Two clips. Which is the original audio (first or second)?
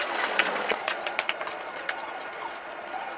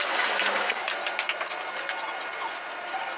second